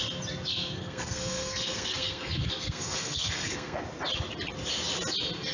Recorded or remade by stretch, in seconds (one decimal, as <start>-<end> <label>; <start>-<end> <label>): 0.0-0.5 recorded; 0.5-3.8 remade; 3.8-5.5 recorded